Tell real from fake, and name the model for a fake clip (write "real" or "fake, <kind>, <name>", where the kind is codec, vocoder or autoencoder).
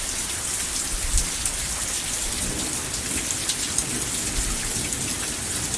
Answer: real